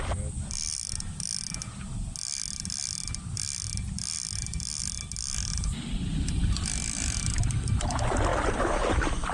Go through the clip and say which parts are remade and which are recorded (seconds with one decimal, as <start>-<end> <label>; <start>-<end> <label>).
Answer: 0.0-9.3 recorded